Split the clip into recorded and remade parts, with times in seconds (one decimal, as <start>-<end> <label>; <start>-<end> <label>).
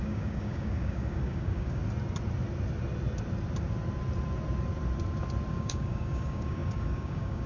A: 0.0-1.8 remade; 1.8-5.5 recorded; 5.5-7.5 remade